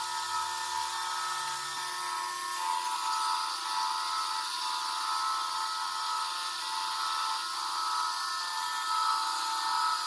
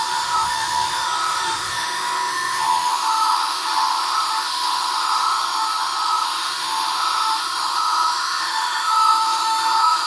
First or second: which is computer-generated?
second